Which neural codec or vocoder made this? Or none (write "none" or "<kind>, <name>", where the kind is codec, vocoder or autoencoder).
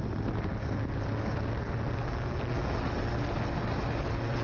none